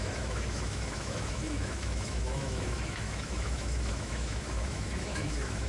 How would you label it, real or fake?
fake